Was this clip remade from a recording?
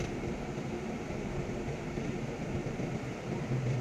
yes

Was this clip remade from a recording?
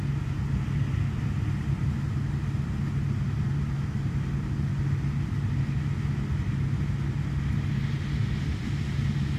no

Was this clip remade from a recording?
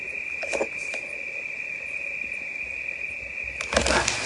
no